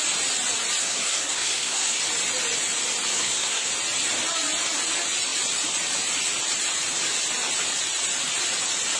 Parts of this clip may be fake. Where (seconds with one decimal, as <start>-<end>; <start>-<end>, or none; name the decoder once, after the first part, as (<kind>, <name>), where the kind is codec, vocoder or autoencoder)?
0.8-2.0 (codec, SNAC); 3.1-3.7